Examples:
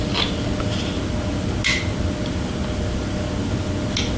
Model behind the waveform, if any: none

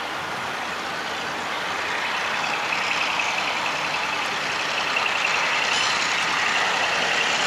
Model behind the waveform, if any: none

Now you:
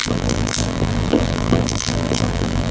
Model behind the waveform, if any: vocoder, BigVGAN v2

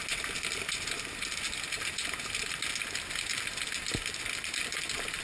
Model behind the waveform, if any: none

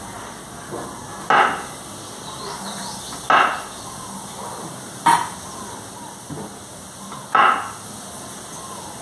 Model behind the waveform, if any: none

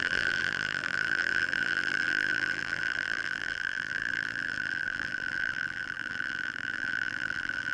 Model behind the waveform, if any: vocoder, BigVGAN v2